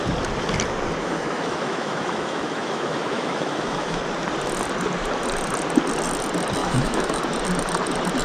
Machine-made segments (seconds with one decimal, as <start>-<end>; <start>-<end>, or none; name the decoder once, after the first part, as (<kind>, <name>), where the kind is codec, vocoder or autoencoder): 1.0-4.0 (autoencoder, DAC-VAE); 6.6-7.2